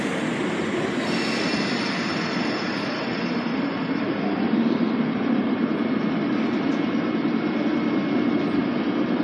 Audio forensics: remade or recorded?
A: remade